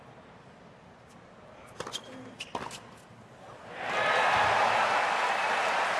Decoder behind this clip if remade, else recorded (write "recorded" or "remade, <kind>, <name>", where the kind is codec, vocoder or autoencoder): recorded